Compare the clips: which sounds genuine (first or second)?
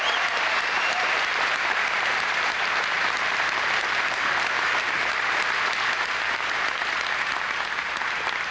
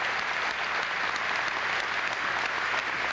second